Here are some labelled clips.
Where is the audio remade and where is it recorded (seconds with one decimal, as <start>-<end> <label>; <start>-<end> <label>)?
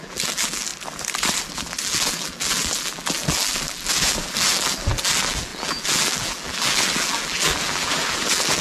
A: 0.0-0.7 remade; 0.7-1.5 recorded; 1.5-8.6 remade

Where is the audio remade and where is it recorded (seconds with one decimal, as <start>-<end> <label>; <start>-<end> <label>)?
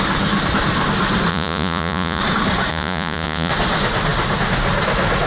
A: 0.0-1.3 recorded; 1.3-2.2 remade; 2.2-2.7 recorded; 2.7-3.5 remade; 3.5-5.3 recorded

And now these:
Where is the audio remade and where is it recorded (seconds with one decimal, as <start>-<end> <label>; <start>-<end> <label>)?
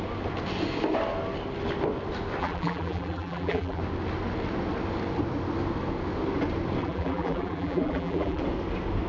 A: 0.0-2.4 recorded; 2.4-3.8 remade; 3.8-6.8 recorded; 6.8-8.4 remade; 8.4-9.1 recorded